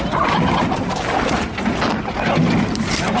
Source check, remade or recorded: recorded